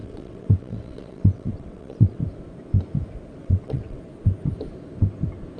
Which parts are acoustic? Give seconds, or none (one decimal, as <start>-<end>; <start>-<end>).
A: 2.2-3.4; 4.0-5.6

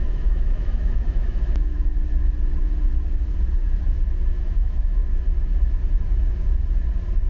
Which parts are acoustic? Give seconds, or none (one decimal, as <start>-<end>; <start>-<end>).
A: 1.9-4.4; 5.0-7.3

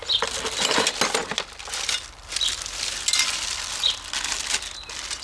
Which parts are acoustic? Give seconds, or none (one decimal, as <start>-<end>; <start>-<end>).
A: 0.0-5.2

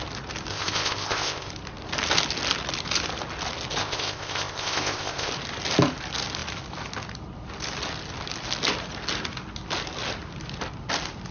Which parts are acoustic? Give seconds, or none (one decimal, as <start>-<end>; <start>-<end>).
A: 0.0-0.5; 1.5-3.8; 5.3-11.3